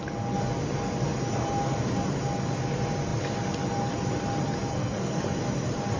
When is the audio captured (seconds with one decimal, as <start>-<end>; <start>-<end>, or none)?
0.0-4.7; 5.2-6.0